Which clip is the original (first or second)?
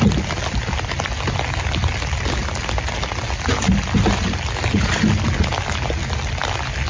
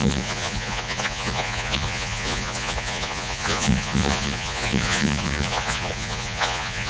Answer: first